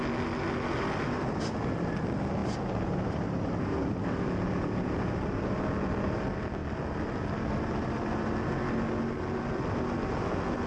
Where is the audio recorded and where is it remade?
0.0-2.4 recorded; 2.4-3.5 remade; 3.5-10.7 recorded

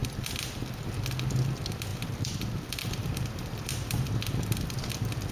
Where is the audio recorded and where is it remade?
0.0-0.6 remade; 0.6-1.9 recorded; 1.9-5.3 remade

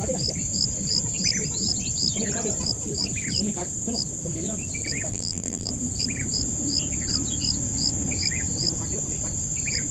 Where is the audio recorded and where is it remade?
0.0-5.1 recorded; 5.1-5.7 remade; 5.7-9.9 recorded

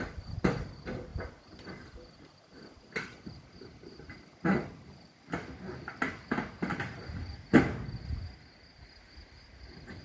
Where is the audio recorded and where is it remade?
0.0-10.0 recorded

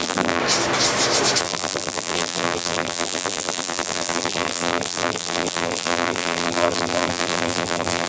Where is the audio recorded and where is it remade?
0.0-0.4 remade; 0.4-1.4 recorded; 1.4-8.1 remade

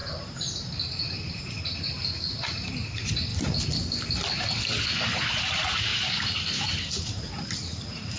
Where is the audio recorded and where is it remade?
0.0-3.3 remade; 3.3-5.4 recorded; 5.4-8.2 remade